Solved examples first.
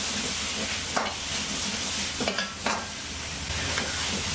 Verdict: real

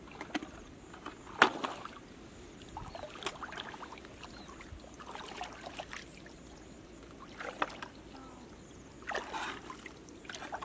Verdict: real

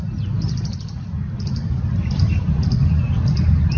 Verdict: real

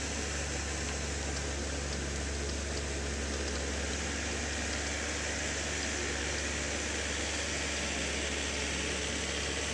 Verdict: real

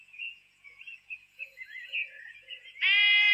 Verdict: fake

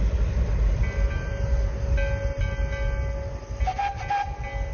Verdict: real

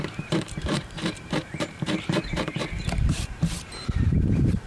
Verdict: fake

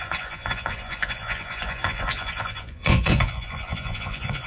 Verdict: fake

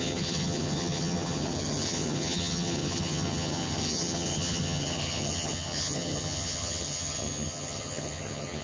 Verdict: fake